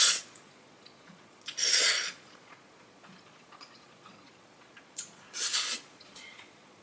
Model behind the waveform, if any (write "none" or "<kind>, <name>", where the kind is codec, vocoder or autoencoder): vocoder, Vocos